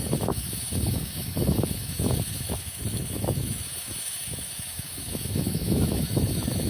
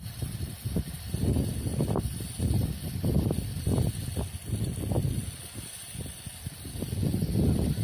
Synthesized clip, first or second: first